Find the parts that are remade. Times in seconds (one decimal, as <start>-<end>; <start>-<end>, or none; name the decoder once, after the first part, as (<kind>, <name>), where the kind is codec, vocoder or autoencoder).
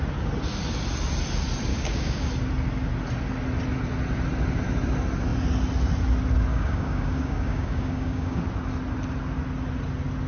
1.7-2.3 (codec, DAC); 6.5-8.4